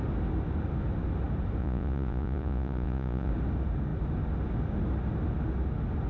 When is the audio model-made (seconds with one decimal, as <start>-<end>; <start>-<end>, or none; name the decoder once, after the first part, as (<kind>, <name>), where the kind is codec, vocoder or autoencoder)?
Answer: 1.6-3.3 (vocoder, Vocos)